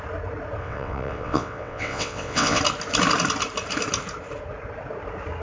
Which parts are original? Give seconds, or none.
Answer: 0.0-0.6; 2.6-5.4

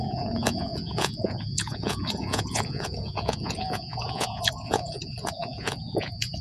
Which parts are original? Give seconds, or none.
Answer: none

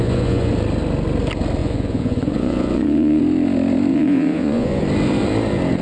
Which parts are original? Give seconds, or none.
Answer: 0.5-1.6; 3.2-3.9; 4.8-5.8

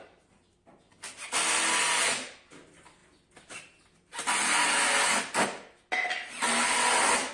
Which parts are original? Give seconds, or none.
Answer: 0.0-7.3

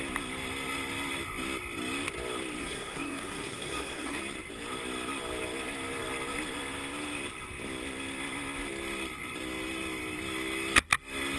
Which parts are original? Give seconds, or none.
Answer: 0.0-2.6; 4.2-11.4